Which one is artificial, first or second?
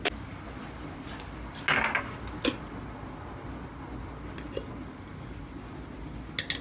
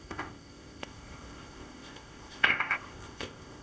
second